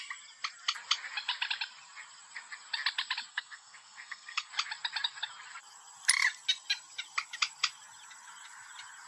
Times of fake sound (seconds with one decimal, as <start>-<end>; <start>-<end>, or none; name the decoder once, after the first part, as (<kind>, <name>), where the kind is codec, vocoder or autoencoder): 3.3-4.5 (codec, SNAC)